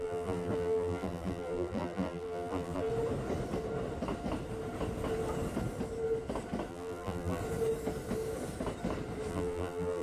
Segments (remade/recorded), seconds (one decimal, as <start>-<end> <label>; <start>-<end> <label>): 0.0-2.9 remade; 2.9-6.7 recorded; 6.7-7.4 remade; 7.4-9.3 recorded; 9.3-10.0 remade